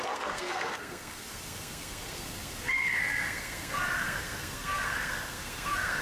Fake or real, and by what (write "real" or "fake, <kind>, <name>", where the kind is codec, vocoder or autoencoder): fake, codec, SNAC